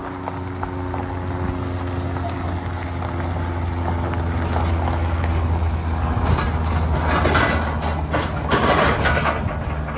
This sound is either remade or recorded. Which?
recorded